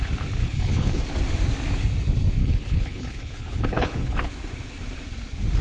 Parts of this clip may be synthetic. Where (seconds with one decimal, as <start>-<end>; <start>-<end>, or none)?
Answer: 0.4-1.0; 2.4-4.3